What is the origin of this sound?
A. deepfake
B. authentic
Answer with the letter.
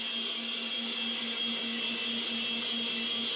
B